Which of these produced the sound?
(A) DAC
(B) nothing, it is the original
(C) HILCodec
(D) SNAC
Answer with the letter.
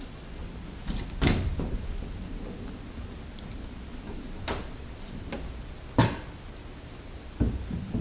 B